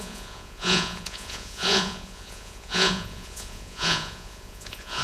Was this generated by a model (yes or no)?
yes